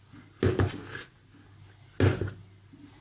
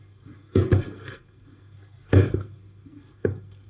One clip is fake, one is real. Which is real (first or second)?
first